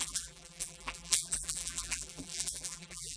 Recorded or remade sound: remade